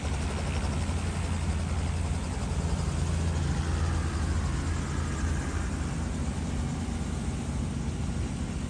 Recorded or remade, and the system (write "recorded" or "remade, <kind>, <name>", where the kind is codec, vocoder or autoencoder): recorded